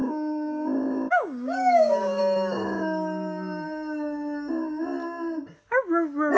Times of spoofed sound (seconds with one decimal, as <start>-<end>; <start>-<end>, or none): 0.0-2.2